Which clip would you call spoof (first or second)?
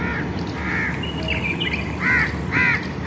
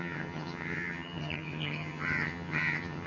second